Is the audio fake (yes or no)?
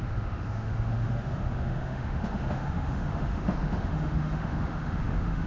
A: yes